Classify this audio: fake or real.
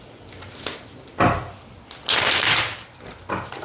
real